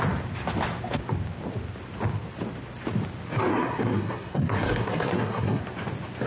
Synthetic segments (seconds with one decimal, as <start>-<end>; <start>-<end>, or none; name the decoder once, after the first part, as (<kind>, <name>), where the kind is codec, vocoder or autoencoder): 3.5-5.6 (codec, SNAC)